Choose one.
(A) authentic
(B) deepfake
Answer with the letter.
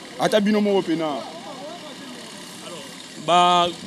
A